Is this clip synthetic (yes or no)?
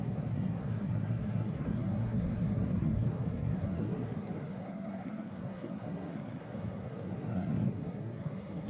yes